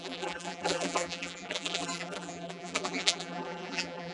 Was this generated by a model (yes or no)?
yes